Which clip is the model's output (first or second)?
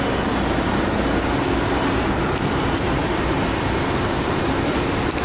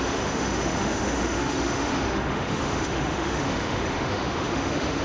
second